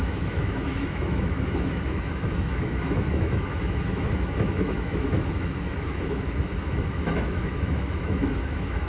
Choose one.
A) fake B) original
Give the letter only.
A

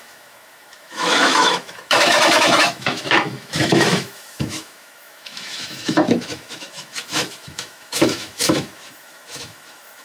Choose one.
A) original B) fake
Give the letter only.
B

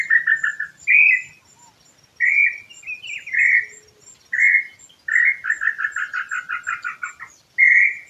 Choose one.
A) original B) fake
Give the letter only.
A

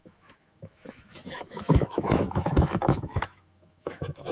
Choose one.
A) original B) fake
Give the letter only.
B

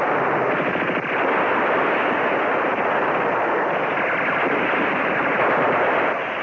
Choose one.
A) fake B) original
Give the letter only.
B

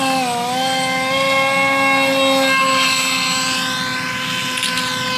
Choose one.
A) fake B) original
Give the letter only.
B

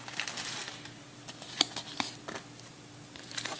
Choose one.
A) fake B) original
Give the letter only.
B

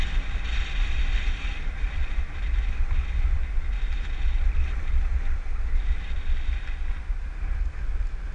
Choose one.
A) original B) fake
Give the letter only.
A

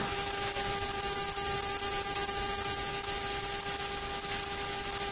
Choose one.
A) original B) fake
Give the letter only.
A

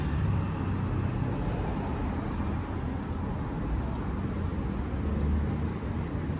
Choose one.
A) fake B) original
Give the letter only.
B